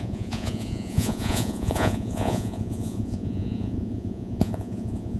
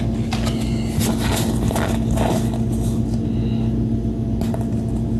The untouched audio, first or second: second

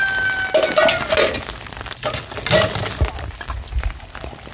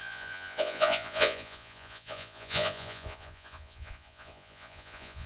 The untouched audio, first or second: first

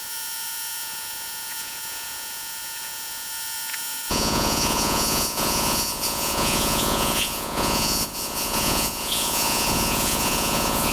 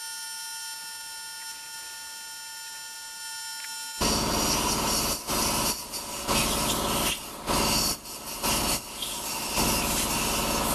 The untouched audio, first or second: second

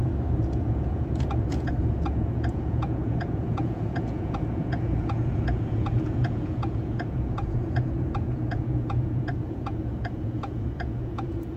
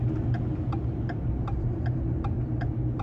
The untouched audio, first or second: second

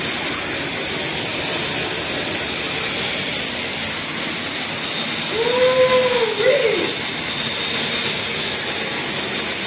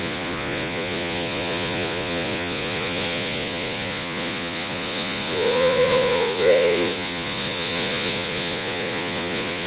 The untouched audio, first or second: first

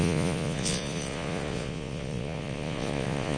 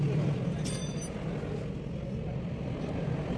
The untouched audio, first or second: second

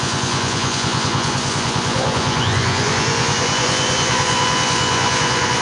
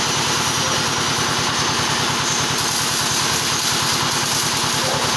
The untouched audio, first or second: second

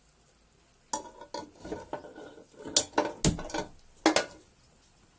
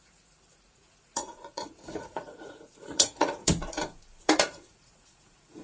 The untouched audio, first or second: first